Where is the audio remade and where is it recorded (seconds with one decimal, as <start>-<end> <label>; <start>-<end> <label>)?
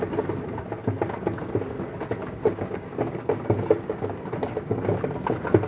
0.0-2.2 recorded; 2.2-4.8 remade; 4.8-5.7 recorded